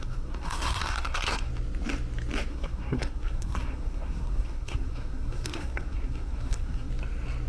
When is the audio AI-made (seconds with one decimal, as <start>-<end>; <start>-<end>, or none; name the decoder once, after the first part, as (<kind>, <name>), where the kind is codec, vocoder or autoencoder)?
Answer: 0.0-1.5 (codec, SNAC); 2.5-6.9